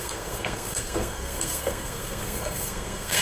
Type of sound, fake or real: fake